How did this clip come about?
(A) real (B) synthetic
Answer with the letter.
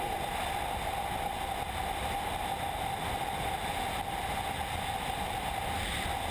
A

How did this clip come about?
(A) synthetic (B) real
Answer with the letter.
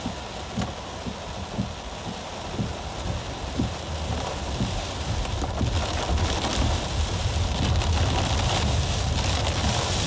B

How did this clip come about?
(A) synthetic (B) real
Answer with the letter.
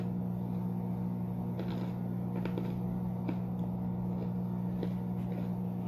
B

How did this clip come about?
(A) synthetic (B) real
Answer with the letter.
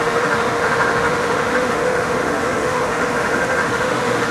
A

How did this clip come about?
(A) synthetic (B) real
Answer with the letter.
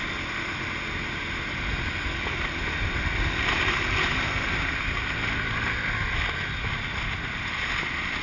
B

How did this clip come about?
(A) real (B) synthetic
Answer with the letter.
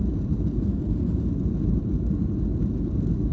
A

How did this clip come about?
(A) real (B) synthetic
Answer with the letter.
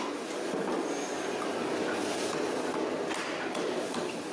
A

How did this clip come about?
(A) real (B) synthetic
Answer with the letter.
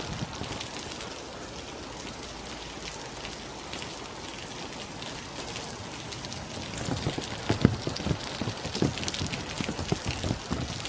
A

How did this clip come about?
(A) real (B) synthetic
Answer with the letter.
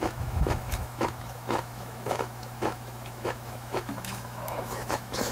B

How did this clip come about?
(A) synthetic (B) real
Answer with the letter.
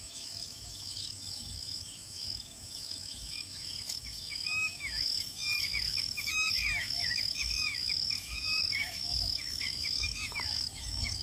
A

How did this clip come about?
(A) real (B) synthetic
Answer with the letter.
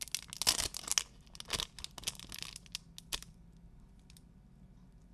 A